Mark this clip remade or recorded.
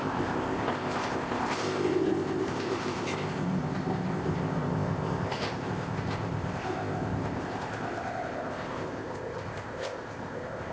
remade